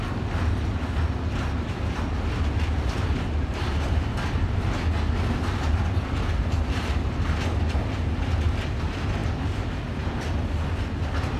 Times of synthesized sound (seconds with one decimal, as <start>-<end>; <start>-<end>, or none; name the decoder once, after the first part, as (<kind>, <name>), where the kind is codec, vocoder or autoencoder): none